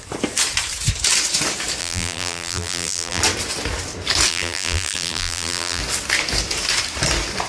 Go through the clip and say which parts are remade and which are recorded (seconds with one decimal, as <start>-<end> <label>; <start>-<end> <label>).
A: 0.0-1.8 recorded; 1.8-3.2 remade; 3.2-4.3 recorded; 4.3-5.8 remade; 5.8-7.5 recorded